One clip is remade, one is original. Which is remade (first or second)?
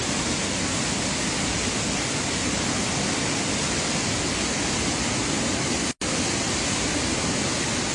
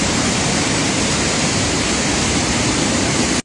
second